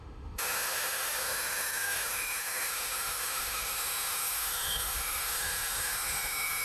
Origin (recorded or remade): remade